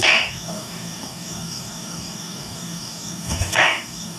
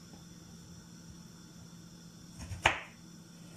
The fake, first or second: first